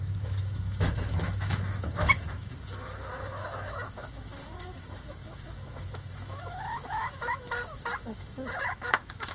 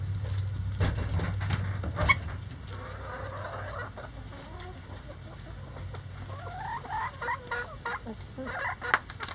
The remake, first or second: first